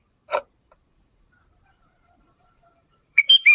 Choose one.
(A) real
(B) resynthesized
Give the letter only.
B